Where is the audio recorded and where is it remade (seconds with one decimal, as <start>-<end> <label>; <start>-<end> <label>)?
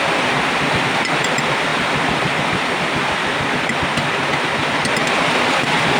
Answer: 0.0-6.0 recorded